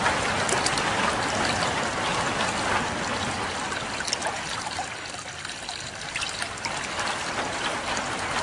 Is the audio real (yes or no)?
yes